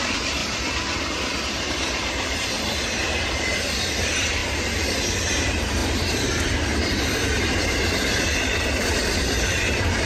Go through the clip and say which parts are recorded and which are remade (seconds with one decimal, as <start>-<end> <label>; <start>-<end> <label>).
0.0-0.4 remade; 0.4-1.4 recorded; 1.4-10.1 remade